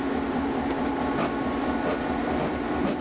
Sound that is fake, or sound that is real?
real